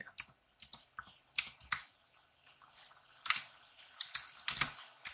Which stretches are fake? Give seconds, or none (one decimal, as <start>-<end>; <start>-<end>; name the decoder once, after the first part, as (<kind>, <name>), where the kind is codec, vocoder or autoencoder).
none